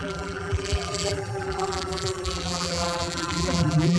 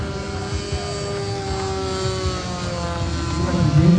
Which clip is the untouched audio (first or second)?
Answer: second